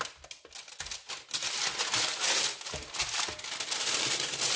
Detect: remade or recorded recorded